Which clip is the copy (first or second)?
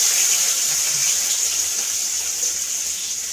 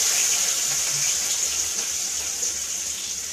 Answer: first